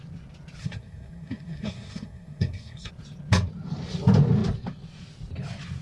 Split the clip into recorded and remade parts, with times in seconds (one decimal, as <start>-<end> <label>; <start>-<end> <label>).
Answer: 0.0-0.6 recorded; 0.6-2.9 remade; 2.9-5.8 recorded